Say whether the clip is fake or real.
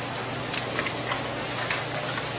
real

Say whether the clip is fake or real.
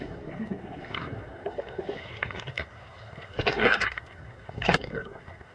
fake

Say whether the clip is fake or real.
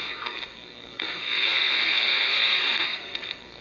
fake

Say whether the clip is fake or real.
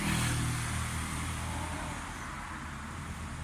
real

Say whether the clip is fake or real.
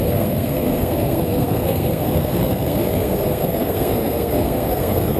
fake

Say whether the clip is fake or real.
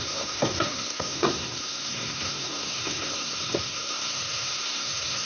fake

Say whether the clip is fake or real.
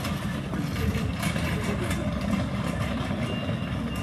real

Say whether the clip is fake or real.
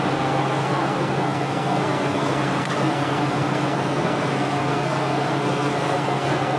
fake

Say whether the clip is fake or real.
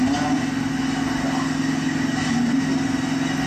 real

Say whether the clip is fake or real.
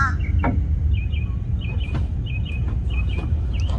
real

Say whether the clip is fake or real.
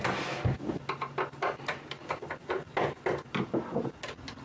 real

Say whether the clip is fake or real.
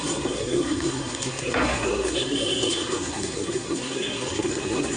fake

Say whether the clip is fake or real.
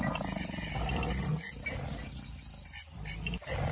real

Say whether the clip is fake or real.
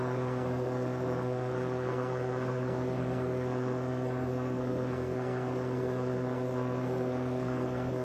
fake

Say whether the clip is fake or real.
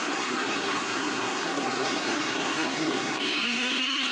fake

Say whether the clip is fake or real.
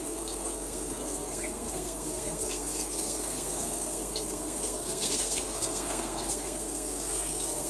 fake